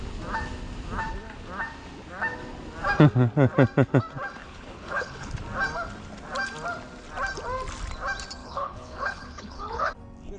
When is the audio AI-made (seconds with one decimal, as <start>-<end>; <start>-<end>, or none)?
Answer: 4.4-5.3; 8.4-9.9